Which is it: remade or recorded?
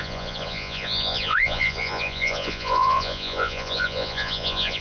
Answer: remade